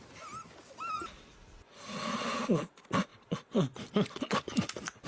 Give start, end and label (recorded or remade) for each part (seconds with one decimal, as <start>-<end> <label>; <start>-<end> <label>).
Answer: 0.0-5.1 recorded